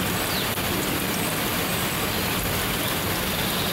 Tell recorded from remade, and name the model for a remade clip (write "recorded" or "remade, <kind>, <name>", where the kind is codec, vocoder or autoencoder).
recorded